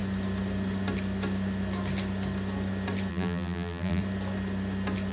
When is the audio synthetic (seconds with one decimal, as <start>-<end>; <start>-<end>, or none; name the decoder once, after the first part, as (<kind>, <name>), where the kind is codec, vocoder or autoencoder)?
3.1-4.0 (vocoder, BigVGAN v2)